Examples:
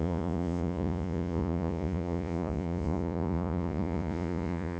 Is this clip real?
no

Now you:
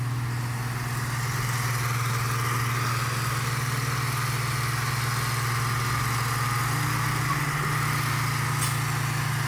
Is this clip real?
yes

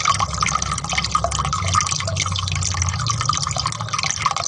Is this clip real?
yes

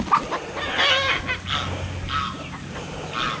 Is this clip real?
yes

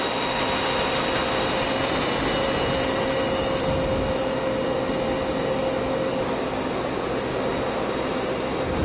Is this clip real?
yes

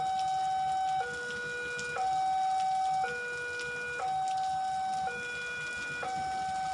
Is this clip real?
yes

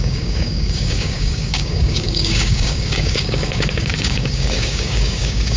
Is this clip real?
no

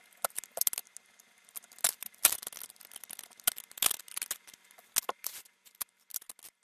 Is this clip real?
yes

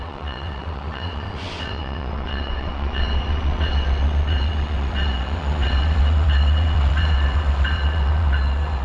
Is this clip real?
no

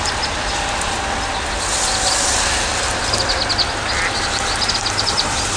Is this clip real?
yes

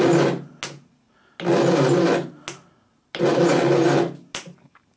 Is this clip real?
yes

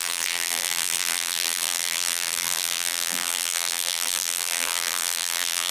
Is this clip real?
no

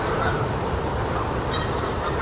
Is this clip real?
no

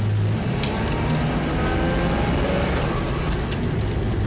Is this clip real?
yes